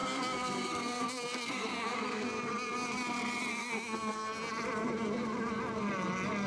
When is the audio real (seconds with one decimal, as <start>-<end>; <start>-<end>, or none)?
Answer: 2.5-3.5; 4.5-6.5